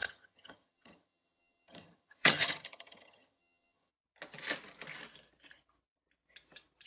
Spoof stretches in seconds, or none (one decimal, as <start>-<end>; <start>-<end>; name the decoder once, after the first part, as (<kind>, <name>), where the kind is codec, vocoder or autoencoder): 0.0-3.9 (vocoder, HiFi-GAN)